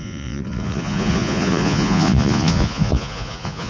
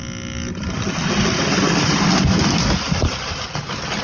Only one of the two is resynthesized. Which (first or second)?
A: first